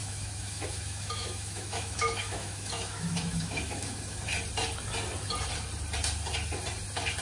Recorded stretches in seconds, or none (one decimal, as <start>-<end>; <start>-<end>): 4.3-7.2

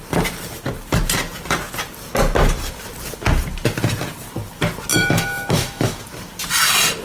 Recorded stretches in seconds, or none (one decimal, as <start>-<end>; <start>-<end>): 0.0-4.9; 6.0-7.0

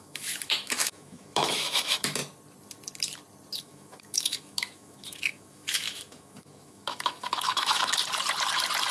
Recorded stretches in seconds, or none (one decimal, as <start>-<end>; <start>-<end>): 2.2-3.6; 8.0-8.9

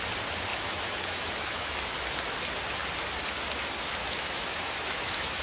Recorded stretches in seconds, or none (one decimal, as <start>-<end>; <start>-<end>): 0.0-0.5; 1.8-4.0

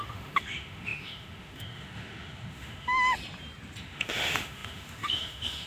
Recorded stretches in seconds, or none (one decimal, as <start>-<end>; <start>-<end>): 3.2-3.8

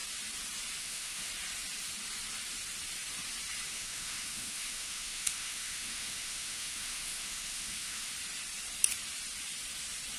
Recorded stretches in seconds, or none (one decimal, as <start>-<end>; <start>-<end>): 0.0-0.8; 1.3-3.7; 8.1-10.2

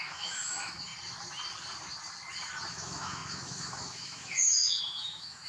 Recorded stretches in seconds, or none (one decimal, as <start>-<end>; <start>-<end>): 0.9-2.7

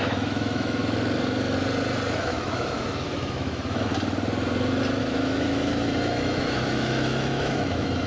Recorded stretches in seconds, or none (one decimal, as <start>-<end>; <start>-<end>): 0.8-2.1; 3.9-5.0